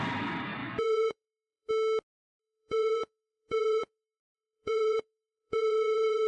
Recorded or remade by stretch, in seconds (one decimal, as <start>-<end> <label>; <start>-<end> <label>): 0.0-0.6 recorded; 0.6-1.7 remade; 1.7-2.4 recorded; 2.4-6.3 remade